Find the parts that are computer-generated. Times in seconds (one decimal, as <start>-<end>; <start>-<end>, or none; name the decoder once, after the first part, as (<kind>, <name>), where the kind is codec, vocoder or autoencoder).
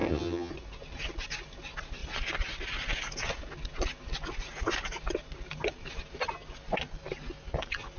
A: 0.0-0.5 (vocoder, HiFi-GAN)